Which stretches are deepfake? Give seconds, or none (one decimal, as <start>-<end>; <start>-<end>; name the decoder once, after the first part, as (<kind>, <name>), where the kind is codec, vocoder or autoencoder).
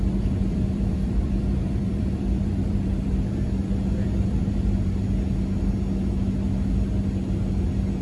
0.0-5.0 (vocoder, BigVGAN v2)